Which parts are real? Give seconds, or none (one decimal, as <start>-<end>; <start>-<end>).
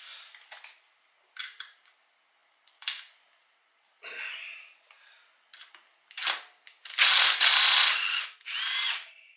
0.0-9.4